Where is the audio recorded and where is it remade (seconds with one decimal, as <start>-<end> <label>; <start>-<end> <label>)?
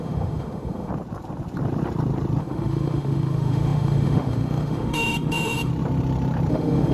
0.0-0.9 remade; 0.9-2.4 recorded; 2.4-5.7 remade; 5.7-6.5 recorded; 6.5-6.9 remade